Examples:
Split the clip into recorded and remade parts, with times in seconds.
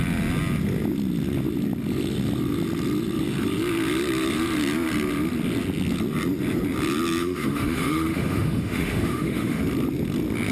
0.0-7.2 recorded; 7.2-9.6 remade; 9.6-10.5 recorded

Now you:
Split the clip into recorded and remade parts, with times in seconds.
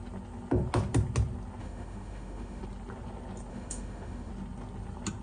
0.0-1.6 recorded; 1.6-2.6 remade; 2.6-3.5 recorded; 3.5-4.3 remade; 4.3-5.2 recorded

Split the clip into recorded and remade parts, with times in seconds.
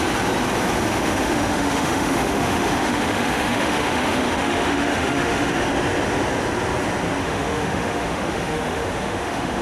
0.0-0.9 recorded; 0.9-5.5 remade; 5.5-7.2 recorded; 7.2-9.6 remade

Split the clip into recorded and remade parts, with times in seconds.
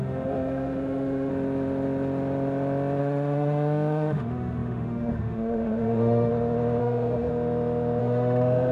0.0-1.3 remade; 1.3-3.0 recorded; 3.0-6.3 remade; 6.3-6.8 recorded; 6.8-7.3 remade; 7.3-8.0 recorded; 8.0-8.7 remade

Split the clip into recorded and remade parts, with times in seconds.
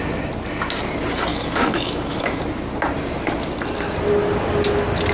0.0-1.3 recorded; 1.3-2.4 remade; 2.4-5.1 recorded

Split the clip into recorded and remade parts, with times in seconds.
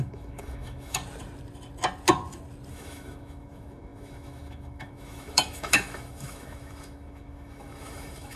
0.0-1.0 remade; 1.0-2.7 recorded; 2.7-8.4 remade